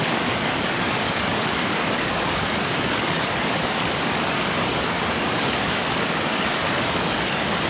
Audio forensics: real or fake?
fake